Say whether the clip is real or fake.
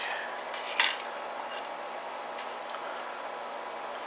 real